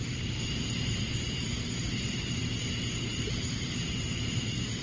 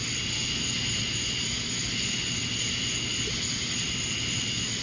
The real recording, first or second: second